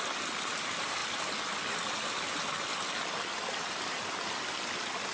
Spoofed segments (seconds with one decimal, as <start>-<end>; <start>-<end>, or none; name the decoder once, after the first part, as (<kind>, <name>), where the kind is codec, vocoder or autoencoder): none